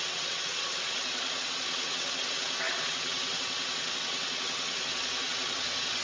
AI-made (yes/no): yes